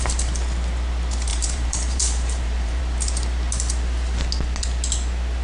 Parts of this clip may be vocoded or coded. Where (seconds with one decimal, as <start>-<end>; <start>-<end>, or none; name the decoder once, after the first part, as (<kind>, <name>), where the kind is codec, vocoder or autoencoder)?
1.3-2.8 (vocoder, BigVGAN v2)